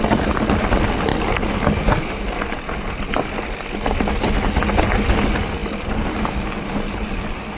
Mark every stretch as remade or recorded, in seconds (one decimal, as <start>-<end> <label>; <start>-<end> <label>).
0.0-7.6 recorded